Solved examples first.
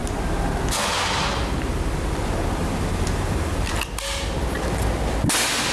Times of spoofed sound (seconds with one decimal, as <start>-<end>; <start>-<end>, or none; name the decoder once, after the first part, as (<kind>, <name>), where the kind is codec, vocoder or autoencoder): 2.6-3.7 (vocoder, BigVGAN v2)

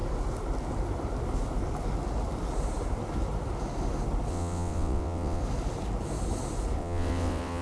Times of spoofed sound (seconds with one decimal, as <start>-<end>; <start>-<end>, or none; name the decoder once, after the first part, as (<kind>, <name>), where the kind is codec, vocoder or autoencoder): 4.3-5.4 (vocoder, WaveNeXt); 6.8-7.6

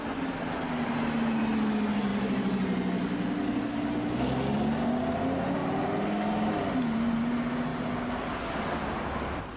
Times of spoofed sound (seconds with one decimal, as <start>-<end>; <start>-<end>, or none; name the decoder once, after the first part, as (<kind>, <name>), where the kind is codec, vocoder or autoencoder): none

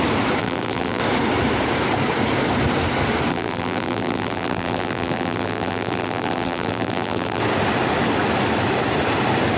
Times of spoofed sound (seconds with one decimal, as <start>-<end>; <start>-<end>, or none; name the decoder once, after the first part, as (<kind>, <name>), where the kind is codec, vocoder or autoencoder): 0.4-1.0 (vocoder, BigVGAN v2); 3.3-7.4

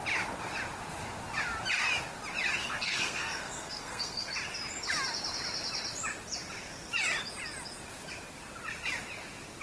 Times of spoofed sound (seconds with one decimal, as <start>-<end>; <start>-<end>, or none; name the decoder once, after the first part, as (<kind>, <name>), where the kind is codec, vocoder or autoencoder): 2.6-4.3 (codec, SNAC)

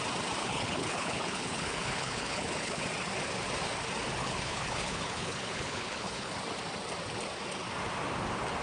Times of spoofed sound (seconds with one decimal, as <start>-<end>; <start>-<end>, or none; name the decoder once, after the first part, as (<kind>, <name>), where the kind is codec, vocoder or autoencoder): 0.4-2.8 (codec, HILCodec); 4.2-6.3

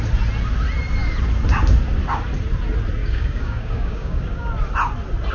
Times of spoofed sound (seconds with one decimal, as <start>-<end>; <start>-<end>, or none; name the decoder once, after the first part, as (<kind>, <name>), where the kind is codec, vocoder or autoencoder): 3.0-4.5 (codec, DAC)